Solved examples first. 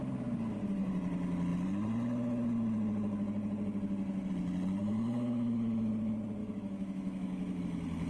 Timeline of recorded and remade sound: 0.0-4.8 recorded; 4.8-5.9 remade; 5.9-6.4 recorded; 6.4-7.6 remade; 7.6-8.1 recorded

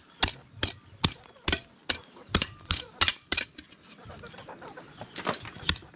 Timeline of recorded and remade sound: 0.0-6.0 recorded

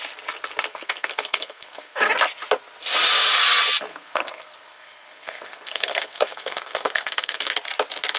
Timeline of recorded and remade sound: 0.0-0.7 recorded; 0.7-2.1 remade; 2.1-3.9 recorded; 3.9-7.5 remade; 7.5-8.2 recorded

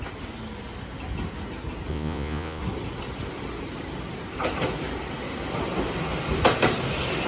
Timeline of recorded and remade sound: 0.0-1.9 recorded; 1.9-2.6 remade; 2.6-7.3 recorded

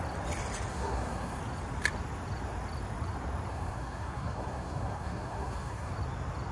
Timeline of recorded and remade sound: 0.0-0.7 recorded; 0.7-1.4 remade; 1.4-3.5 recorded; 3.5-5.9 remade; 5.9-6.5 recorded